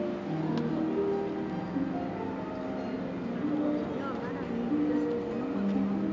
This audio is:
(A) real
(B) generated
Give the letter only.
A